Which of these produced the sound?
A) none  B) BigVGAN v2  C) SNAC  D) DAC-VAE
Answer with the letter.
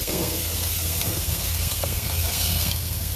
C